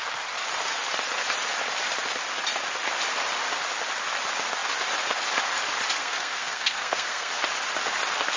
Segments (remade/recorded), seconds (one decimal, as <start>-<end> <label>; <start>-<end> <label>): 0.0-6.0 recorded; 6.0-7.3 remade; 7.3-8.4 recorded